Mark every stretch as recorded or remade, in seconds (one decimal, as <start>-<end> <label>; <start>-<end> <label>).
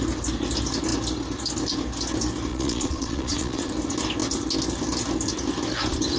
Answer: 0.0-2.5 recorded; 2.5-3.7 remade; 3.7-6.2 recorded